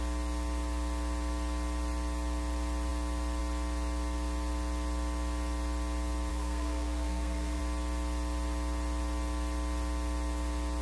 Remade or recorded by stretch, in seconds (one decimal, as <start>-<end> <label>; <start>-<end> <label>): 0.0-6.3 recorded; 6.3-7.6 remade; 7.6-10.8 recorded

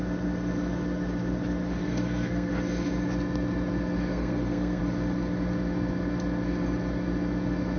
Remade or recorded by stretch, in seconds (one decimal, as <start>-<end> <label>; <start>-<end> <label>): 0.0-1.8 recorded; 1.8-2.5 remade; 2.5-4.1 recorded; 4.1-4.8 remade; 4.8-7.8 recorded

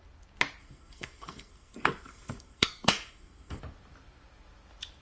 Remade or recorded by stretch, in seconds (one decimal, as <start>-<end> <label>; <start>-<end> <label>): 0.0-0.6 recorded; 0.6-3.6 remade; 3.6-5.0 recorded